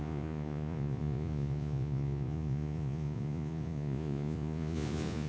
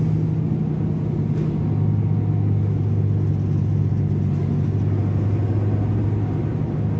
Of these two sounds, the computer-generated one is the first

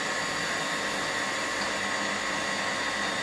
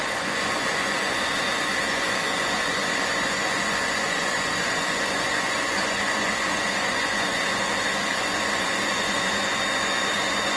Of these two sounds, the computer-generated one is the second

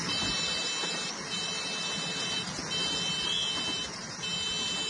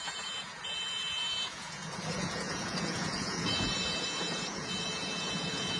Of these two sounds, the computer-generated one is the second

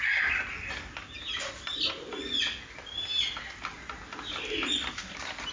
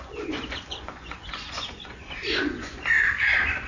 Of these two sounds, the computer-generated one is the second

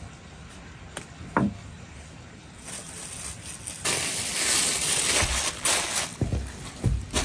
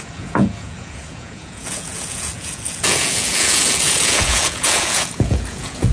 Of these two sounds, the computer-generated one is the second